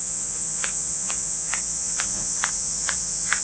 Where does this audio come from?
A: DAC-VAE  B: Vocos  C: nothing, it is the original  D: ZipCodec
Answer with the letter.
B